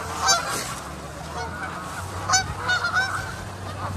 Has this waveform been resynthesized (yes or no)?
no